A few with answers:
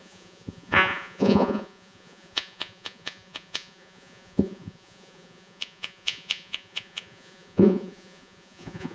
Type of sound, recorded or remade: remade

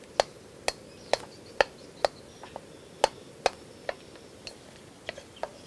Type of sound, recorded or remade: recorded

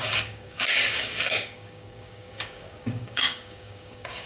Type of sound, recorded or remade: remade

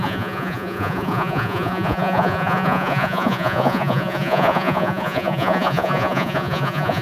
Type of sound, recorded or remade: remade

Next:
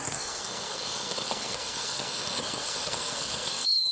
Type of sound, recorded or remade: remade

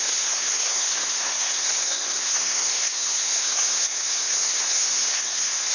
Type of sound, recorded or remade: remade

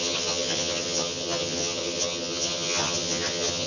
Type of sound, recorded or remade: remade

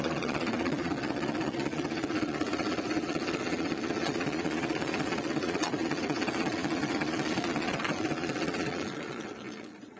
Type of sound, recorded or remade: remade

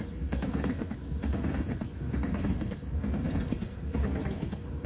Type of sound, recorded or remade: remade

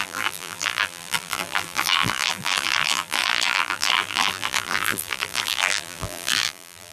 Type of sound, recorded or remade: remade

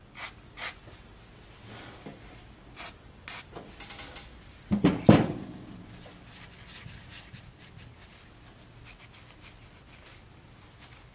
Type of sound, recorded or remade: recorded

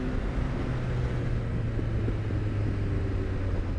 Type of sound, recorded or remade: recorded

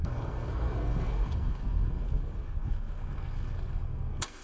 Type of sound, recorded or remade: remade